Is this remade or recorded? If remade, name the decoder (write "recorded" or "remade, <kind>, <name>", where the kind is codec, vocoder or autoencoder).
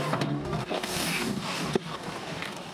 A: remade, codec, DAC